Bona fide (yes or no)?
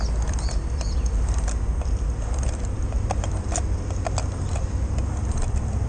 yes